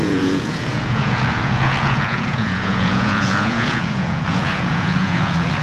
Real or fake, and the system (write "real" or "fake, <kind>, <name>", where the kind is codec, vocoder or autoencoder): fake, vocoder, Vocos